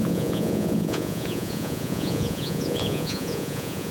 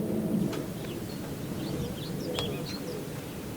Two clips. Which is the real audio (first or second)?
second